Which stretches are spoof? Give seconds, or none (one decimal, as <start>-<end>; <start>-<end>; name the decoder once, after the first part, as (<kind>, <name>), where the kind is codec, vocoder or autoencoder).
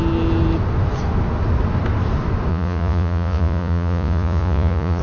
2.5-5.0 (vocoder, Vocos)